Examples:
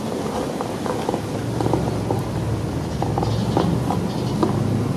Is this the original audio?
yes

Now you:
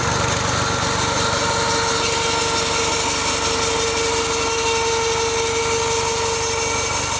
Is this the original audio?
yes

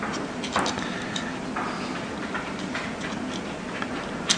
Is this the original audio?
yes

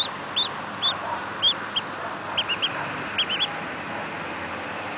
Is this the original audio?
yes